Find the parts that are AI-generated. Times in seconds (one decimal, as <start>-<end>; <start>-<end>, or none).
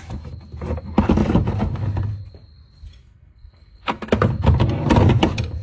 3.0-4.1